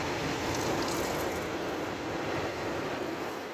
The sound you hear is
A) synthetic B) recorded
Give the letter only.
B